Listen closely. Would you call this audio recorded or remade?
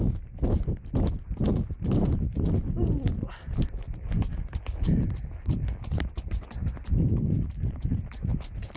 recorded